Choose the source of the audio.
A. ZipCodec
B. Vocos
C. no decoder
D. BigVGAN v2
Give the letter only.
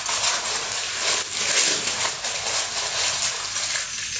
C